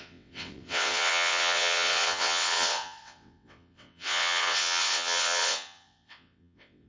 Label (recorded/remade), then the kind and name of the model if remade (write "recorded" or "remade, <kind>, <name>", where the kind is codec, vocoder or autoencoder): remade, vocoder, WaveNeXt